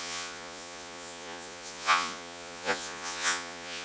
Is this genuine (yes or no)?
no